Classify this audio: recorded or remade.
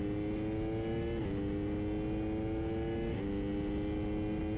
recorded